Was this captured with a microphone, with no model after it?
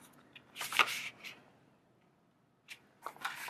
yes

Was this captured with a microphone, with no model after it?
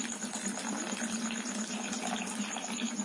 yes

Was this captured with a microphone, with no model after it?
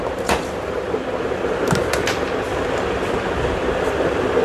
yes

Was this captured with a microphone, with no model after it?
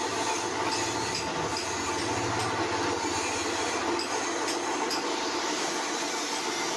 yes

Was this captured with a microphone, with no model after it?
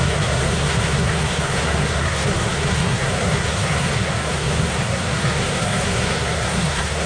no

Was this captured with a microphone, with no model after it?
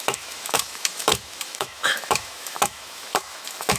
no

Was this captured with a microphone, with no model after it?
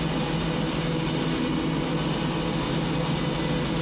yes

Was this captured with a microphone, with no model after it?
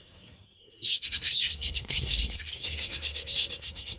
no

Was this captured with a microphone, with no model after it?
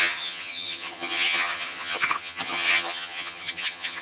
no